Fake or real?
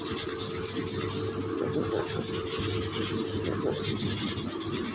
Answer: real